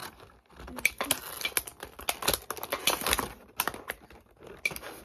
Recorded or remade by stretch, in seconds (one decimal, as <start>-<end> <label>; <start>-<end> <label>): 0.0-5.0 recorded